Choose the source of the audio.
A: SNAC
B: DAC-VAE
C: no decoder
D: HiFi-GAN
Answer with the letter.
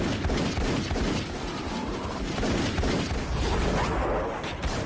C